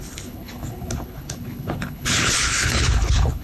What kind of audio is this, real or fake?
fake